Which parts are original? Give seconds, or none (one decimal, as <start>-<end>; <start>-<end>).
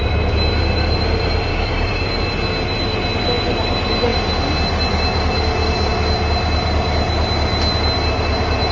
0.0-1.5; 2.0-8.7